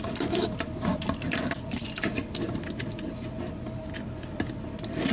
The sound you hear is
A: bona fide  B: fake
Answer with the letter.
B